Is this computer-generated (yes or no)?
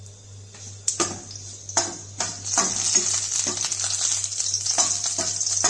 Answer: no